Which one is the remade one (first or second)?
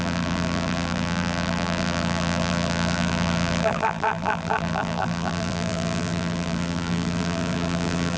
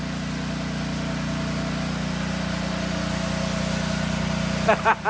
first